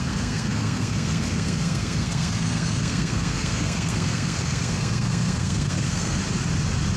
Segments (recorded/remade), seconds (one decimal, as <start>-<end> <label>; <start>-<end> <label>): 0.0-6.2 remade; 6.2-7.0 recorded